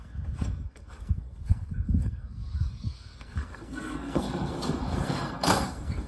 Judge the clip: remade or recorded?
remade